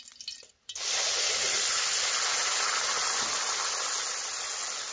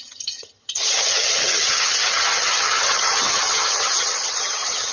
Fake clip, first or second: second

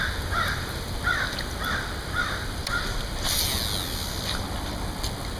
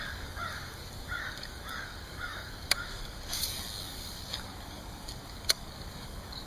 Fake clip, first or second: second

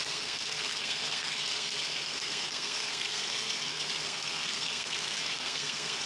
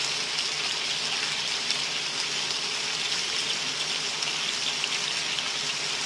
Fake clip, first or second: first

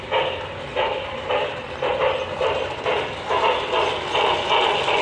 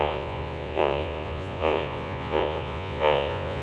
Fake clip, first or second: second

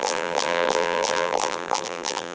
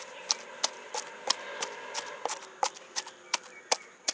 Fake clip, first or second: first